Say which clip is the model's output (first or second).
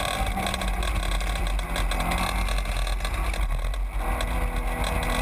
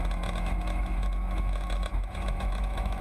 second